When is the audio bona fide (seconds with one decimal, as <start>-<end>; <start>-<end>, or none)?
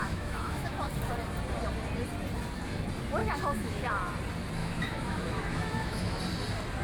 0.9-3.2; 3.9-4.6; 6.2-6.8